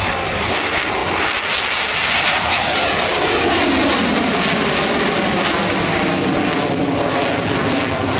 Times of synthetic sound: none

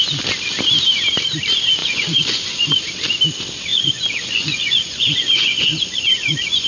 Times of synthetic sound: 1.8-2.8 (vocoder, Vocos); 3.7-6.7